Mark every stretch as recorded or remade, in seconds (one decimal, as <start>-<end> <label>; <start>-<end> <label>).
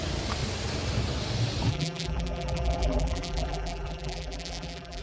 0.0-1.7 recorded; 1.7-5.0 remade